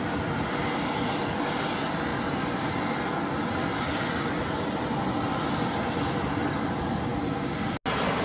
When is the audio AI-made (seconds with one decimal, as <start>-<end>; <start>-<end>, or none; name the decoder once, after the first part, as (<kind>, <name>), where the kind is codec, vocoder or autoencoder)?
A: none